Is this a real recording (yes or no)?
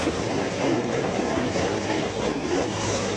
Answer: no